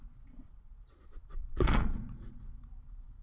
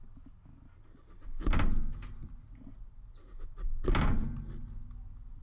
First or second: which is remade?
first